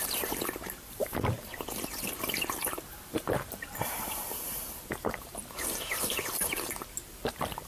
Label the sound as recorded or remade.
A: remade